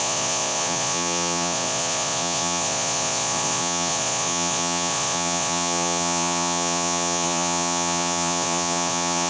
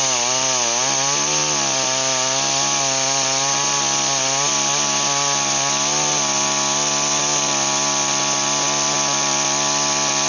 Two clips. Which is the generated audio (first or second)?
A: first